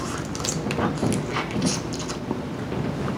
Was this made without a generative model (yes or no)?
yes